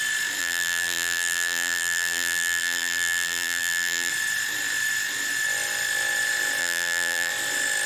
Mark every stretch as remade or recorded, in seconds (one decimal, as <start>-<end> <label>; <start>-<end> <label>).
0.0-0.4 recorded; 0.4-4.1 remade; 4.1-6.6 recorded; 6.6-7.3 remade; 7.3-7.9 recorded